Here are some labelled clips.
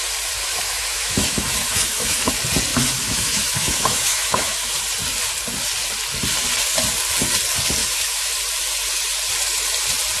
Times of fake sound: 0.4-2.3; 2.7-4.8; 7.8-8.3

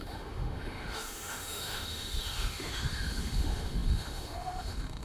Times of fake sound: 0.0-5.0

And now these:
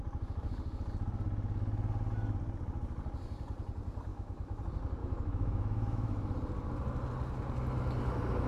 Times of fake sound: 4.1-4.6; 5.0-6.1

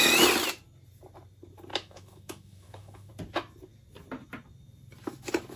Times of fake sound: 1.7-3.1

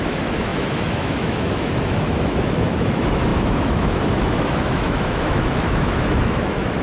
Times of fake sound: 0.0-6.8

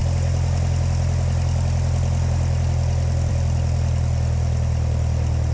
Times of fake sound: none

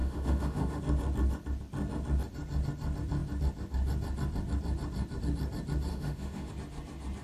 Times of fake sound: 0.0-0.8; 5.9-6.5